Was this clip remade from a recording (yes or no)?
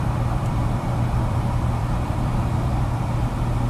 yes